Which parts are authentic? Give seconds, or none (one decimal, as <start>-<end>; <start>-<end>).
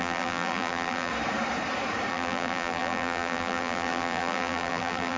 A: 1.1-2.1